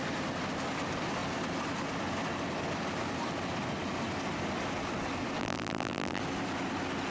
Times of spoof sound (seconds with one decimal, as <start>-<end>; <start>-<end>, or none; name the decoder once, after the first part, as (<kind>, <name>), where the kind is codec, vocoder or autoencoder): 5.4-6.2 (vocoder, BigVGAN v2)